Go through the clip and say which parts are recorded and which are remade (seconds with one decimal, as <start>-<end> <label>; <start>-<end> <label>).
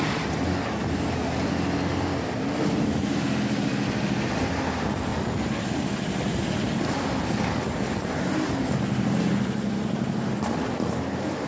0.0-11.5 recorded